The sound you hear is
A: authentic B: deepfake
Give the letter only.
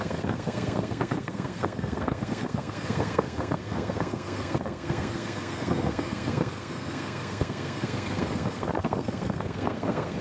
B